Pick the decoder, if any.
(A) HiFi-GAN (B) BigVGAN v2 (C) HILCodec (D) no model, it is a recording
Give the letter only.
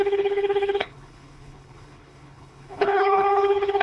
C